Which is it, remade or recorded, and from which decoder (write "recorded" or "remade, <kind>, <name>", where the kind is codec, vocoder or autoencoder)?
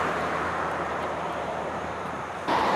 remade, vocoder, BigVGAN v2